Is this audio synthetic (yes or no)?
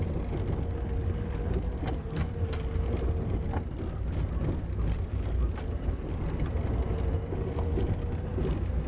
no